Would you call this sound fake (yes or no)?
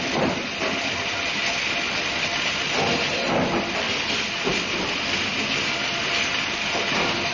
no